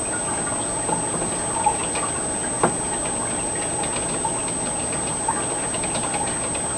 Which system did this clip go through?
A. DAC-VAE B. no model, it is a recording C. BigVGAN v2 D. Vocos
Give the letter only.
B